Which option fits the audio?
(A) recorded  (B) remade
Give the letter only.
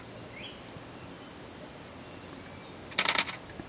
A